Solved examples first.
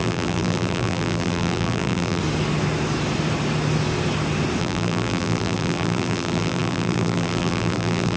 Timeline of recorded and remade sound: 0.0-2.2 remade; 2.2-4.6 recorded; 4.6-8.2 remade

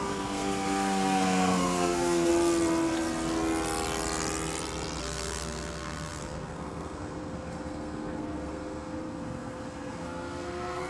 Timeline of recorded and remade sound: 0.0-2.3 remade; 2.3-5.0 recorded; 5.0-10.9 remade

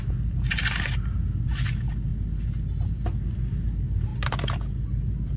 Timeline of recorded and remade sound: 0.0-5.4 recorded

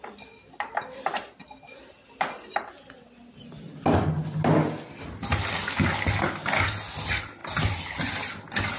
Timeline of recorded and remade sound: 0.0-8.8 recorded

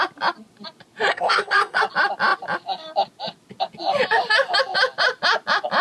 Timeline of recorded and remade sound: 0.0-1.1 recorded; 1.1-1.8 remade; 1.8-5.8 recorded

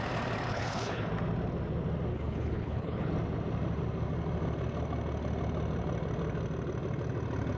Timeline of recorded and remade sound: 0.0-0.5 recorded; 0.5-1.1 remade; 1.1-2.1 recorded; 2.1-3.1 remade; 3.1-7.6 recorded

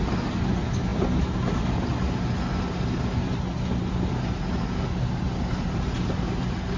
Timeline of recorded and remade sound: 0.0-6.8 recorded